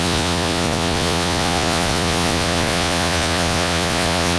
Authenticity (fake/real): fake